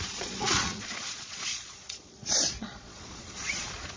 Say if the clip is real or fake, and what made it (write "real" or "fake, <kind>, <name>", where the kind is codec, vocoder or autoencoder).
fake, vocoder, Vocos